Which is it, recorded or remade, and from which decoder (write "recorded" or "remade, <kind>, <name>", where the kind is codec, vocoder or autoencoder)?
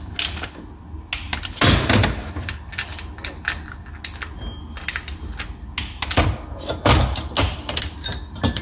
recorded